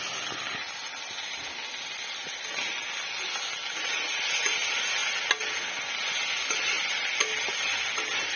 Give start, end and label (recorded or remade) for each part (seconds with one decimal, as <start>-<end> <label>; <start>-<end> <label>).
0.0-8.4 recorded